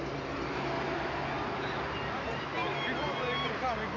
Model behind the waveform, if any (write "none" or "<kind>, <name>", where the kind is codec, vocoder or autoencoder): none